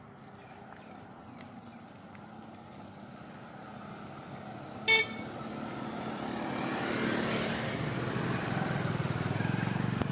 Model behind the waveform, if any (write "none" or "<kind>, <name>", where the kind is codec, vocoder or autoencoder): none